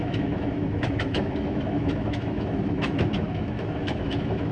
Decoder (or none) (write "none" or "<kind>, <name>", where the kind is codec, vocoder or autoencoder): autoencoder, DAC-VAE